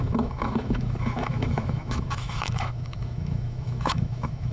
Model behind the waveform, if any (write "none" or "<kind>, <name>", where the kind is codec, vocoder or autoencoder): autoencoder, DAC-VAE